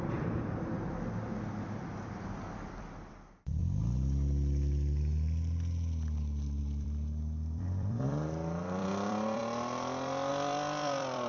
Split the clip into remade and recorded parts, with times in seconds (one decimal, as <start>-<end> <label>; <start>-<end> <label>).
0.0-0.7 remade; 0.7-1.6 recorded; 1.6-3.6 remade; 3.6-6.6 recorded; 6.6-9.4 remade; 9.4-10.3 recorded; 10.3-11.3 remade